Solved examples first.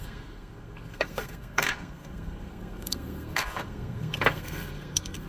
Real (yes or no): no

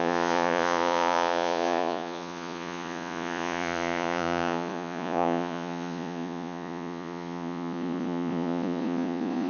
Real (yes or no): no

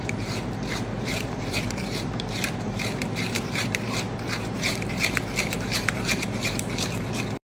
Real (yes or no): no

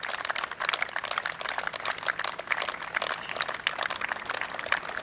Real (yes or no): yes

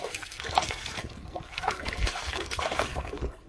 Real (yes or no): no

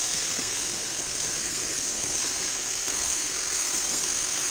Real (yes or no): no